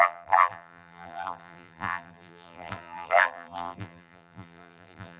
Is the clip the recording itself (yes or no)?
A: no